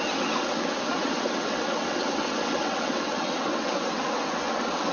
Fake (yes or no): yes